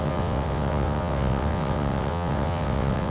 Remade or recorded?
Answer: remade